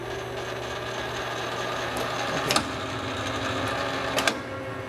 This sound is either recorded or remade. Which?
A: recorded